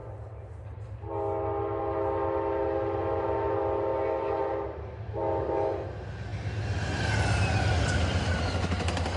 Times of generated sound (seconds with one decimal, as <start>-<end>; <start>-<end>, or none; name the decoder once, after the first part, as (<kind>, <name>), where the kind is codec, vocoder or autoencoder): none